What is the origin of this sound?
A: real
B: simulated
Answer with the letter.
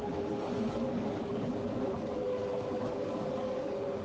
B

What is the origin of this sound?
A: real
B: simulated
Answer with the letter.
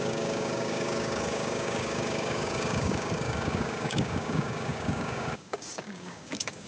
B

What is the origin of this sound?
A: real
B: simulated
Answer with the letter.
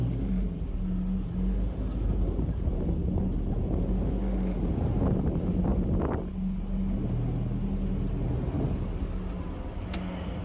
A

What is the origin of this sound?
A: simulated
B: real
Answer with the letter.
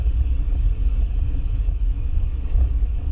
A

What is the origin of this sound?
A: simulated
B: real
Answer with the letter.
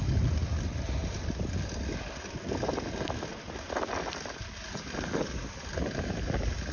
B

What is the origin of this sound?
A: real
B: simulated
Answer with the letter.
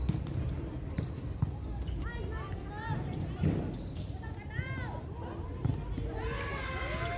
A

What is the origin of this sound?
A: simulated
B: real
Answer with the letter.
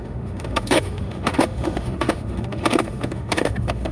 A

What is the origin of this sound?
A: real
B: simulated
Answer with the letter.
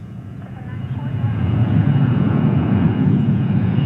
B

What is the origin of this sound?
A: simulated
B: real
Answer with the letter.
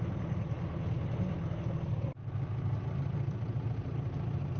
B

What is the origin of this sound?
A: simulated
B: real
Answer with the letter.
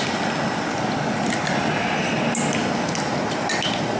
B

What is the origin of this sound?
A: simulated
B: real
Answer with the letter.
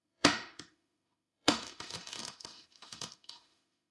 A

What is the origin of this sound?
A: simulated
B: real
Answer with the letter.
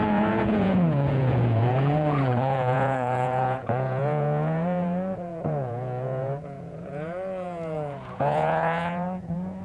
A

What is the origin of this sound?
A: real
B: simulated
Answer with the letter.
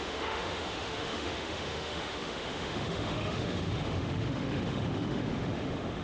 B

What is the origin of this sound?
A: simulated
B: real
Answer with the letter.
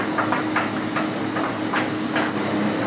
B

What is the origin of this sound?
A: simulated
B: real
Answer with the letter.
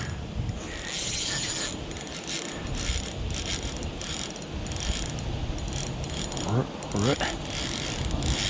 B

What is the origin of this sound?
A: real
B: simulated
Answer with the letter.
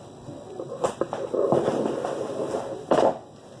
A